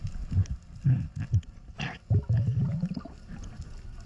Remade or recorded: recorded